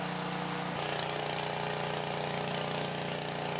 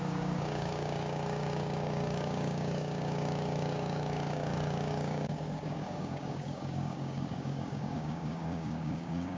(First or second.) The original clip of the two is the first